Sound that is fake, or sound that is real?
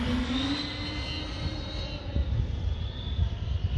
real